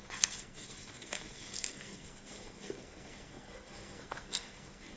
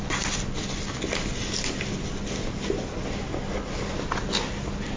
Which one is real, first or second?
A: second